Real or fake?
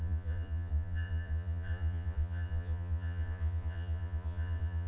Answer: fake